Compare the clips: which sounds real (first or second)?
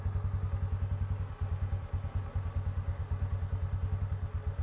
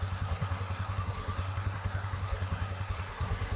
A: first